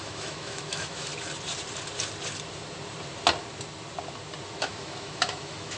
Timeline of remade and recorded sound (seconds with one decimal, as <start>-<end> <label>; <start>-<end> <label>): 0.0-1.1 remade; 1.1-4.6 recorded; 4.6-5.8 remade